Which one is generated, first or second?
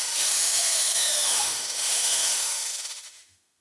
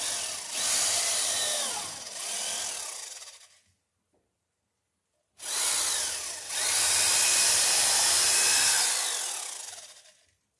first